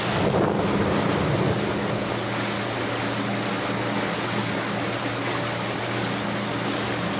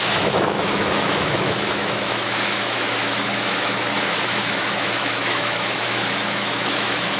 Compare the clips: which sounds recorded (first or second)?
first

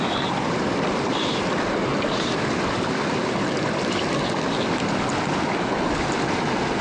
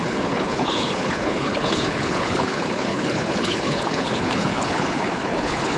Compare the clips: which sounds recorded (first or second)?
first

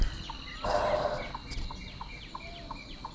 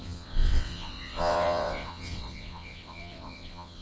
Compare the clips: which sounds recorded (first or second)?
first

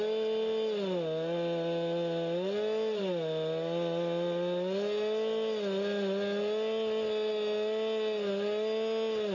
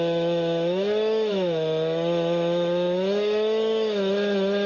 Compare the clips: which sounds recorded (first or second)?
first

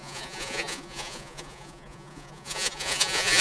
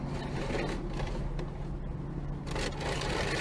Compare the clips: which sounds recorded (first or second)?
second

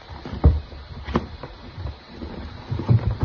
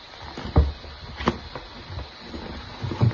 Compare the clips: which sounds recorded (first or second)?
second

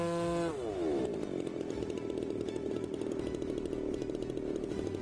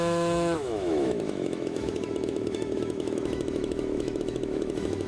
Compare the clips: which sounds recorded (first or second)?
first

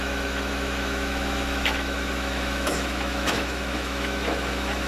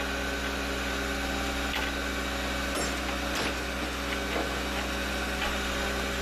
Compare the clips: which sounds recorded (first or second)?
second